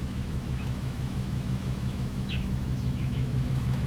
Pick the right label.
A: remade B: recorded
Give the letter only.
A